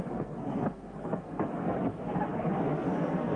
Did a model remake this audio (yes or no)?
yes